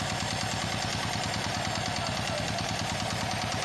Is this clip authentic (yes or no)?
yes